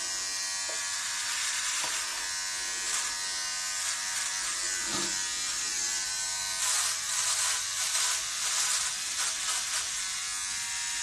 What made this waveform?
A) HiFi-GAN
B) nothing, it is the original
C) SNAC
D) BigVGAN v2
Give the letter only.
B